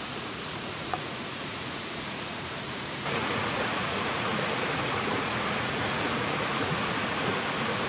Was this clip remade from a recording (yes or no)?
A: yes